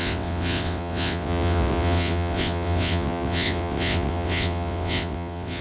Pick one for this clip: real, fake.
fake